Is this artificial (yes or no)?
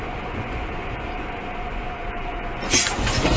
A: yes